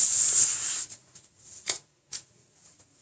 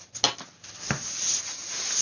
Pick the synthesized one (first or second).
first